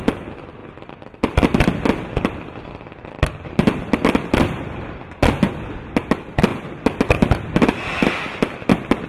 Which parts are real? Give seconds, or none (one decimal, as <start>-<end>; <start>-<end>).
0.0-0.6; 5.5-9.1